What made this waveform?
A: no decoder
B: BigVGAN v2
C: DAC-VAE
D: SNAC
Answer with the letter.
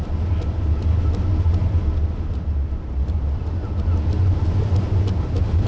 A